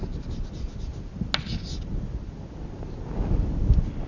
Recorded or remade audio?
recorded